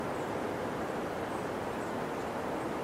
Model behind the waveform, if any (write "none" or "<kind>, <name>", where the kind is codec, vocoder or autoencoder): none